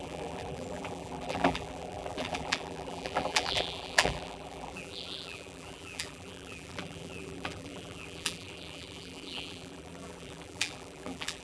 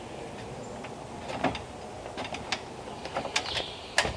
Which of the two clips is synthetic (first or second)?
first